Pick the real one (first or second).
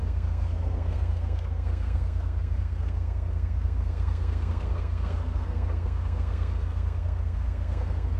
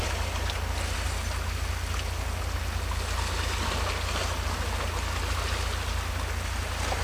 second